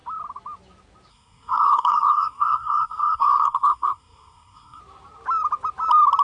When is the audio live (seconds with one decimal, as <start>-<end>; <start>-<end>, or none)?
0.0-1.1; 4.8-6.2

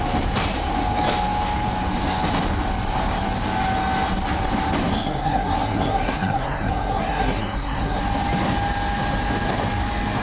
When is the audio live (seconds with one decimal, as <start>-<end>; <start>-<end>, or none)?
0.0-4.9; 8.0-10.2

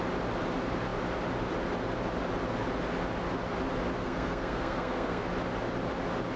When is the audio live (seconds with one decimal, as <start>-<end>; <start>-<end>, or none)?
0.0-4.0; 5.3-6.4

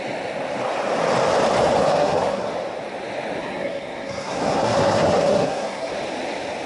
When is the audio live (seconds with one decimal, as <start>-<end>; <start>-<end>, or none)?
0.0-1.8; 2.5-3.4; 5.9-6.7

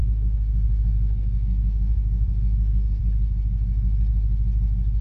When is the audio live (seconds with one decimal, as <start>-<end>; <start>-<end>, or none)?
3.0-5.0